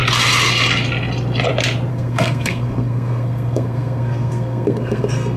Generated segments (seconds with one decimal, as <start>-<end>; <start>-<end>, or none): 1.9-5.4